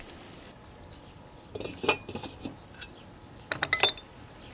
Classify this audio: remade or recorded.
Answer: recorded